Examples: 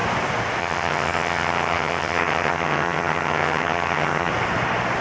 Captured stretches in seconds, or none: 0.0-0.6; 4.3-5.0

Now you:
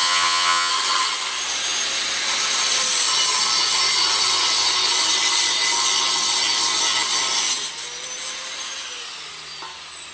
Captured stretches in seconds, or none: 0.7-10.1

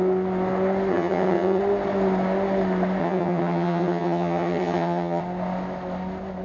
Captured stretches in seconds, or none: 0.0-0.9; 1.6-3.0; 5.2-6.4

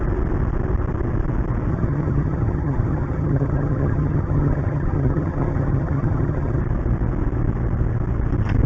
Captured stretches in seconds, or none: 0.0-1.7; 6.6-8.7